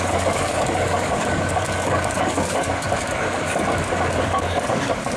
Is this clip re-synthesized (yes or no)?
yes